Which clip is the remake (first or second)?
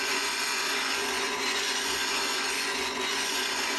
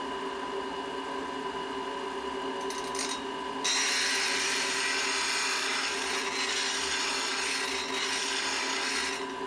first